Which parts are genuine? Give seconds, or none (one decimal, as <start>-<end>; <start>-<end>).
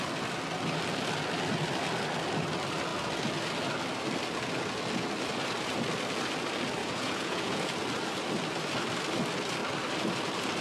0.0-6.8; 7.5-10.6